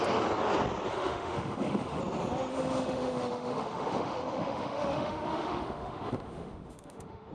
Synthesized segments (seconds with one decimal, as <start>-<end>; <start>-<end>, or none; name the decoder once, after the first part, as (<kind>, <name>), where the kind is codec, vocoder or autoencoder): 0.9-2.0 (autoencoder, DAC-VAE); 2.5-7.3